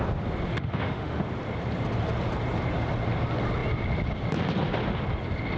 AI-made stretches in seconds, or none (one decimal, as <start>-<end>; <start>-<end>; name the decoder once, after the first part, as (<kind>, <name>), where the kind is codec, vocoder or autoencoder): 0.5-1.2 (autoencoder, DAC-VAE)